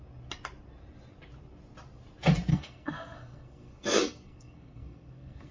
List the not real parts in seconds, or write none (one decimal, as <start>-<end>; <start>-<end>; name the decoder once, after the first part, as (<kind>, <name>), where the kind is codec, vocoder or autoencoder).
2.5-5.5 (codec, SNAC)